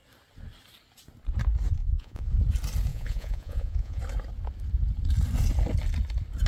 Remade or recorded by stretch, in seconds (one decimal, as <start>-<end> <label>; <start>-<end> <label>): 0.0-1.8 recorded; 1.8-2.3 remade; 2.3-2.9 recorded; 2.9-4.0 remade; 4.0-6.5 recorded